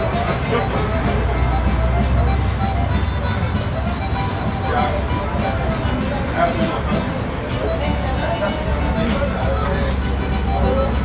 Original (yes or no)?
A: yes